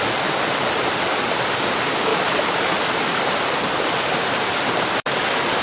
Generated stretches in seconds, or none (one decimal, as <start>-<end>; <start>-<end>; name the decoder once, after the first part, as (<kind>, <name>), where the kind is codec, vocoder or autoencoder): none